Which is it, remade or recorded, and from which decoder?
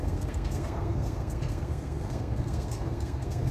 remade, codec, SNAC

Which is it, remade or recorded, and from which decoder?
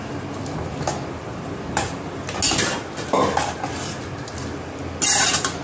recorded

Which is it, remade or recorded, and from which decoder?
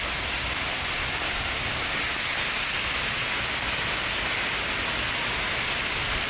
recorded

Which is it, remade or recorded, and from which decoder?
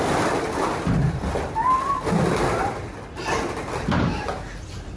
remade, vocoder, BigVGAN v2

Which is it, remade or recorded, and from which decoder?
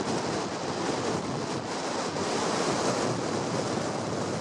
recorded